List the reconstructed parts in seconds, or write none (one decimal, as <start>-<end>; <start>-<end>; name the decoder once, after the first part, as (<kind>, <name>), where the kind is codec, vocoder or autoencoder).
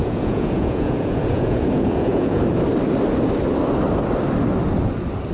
0.0-2.4 (vocoder, Vocos)